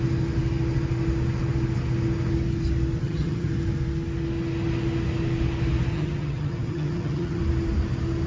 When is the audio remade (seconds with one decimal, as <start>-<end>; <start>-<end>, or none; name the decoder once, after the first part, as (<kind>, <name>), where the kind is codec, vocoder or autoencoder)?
3.0-3.5 (vocoder, HiFi-GAN); 5.9-7.4